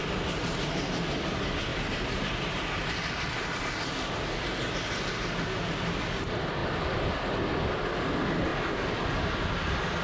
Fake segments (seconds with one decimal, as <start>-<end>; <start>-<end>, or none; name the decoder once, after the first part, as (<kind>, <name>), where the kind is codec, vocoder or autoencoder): 1.7-3.6 (vocoder, BigVGAN v2)